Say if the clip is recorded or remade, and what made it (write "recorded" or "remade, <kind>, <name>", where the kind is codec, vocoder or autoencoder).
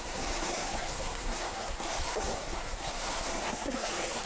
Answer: remade, codec, SNAC